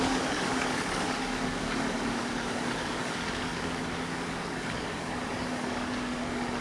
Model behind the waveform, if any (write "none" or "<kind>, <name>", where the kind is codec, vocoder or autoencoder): codec, DAC